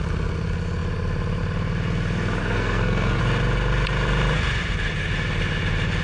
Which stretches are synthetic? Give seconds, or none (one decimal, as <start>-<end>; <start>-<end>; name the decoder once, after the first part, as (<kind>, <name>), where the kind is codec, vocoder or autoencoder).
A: 2.4-3.2 (codec, SNAC)